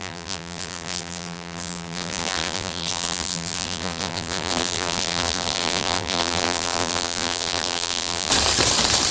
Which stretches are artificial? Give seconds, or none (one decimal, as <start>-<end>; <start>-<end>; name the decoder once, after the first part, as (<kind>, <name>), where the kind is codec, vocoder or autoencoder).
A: 0.0-8.3 (vocoder, BigVGAN v2)